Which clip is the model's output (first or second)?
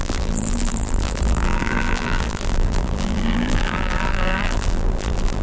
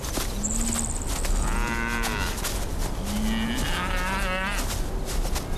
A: first